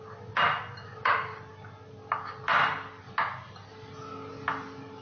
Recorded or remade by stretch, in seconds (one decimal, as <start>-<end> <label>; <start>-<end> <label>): 0.0-5.0 recorded